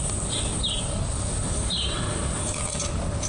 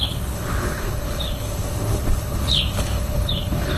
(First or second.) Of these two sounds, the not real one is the second